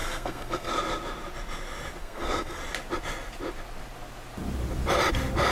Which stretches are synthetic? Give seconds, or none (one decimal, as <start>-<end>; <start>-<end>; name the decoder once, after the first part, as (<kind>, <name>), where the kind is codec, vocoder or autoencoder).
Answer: 0.0-0.7 (codec, SNAC); 2.0-2.6